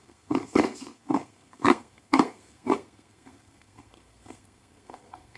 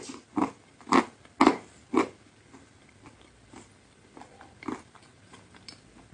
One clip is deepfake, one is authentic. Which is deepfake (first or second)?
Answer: first